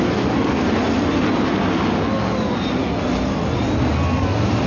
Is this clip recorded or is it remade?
recorded